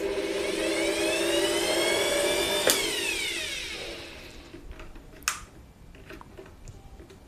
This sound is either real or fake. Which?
real